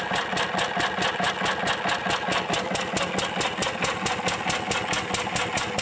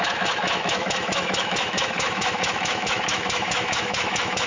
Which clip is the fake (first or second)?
second